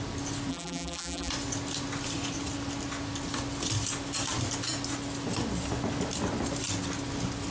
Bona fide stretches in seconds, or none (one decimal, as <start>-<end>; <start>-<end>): 0.0-0.5; 1.3-7.5